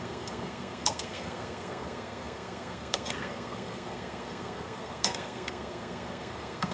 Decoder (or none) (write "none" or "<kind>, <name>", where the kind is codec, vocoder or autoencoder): codec, SNAC